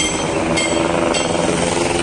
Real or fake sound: real